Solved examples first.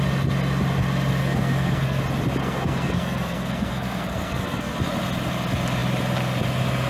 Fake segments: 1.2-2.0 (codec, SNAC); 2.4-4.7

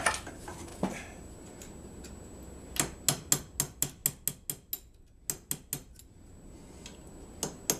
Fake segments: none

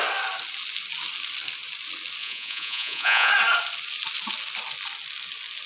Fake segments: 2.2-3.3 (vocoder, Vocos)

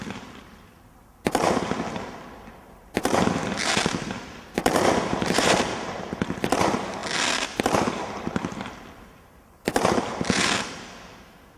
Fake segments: 0.0-7.0 (vocoder, BigVGAN v2); 7.6-11.6

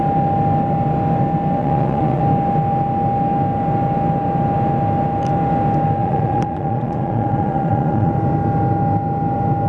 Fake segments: 1.6-2.2 (vocoder, Vocos); 6.0-8.1